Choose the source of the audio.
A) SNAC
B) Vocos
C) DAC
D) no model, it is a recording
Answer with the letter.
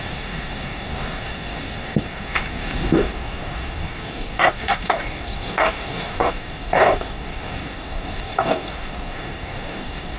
C